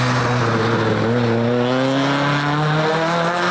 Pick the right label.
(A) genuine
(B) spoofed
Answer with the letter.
A